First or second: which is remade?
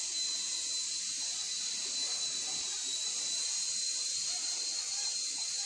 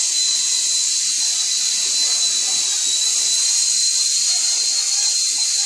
first